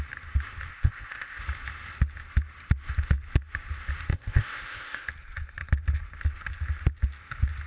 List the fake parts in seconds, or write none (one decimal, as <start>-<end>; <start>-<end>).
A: 0.7-1.4; 4.1-5.1